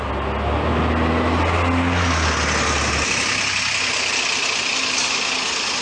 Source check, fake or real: real